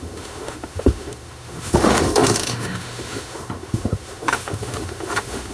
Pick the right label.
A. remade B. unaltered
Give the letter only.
A